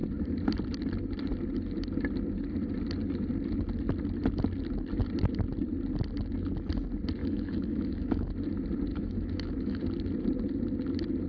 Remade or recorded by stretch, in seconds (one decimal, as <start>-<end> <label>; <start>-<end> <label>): 0.0-7.2 recorded; 7.2-8.3 remade; 8.3-8.9 recorded; 8.9-9.8 remade; 9.8-11.3 recorded